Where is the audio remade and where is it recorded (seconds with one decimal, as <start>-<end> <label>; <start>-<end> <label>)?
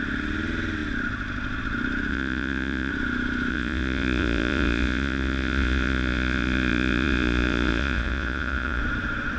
0.0-2.1 recorded; 2.1-2.9 remade; 2.9-3.5 recorded; 3.5-8.8 remade; 8.8-9.4 recorded